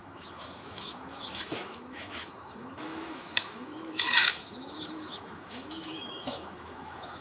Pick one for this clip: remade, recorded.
remade